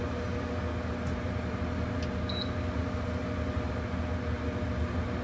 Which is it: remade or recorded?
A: recorded